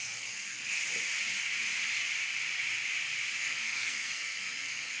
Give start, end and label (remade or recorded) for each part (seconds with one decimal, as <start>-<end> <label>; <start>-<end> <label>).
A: 0.0-0.8 remade; 0.8-3.4 recorded; 3.4-5.0 remade